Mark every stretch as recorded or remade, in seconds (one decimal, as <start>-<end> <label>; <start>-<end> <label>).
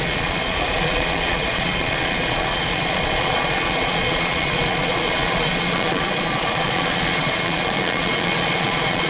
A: 0.0-9.1 remade